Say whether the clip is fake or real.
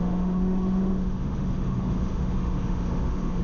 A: fake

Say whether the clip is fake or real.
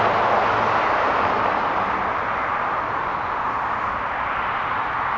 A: real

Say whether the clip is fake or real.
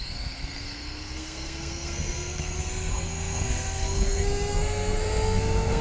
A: fake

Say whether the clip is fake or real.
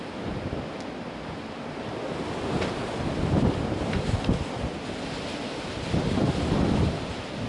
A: real